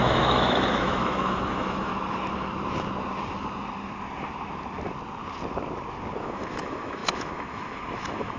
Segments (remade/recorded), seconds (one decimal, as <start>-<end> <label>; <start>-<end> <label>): 0.0-1.9 remade; 1.9-6.2 recorded; 6.2-8.4 remade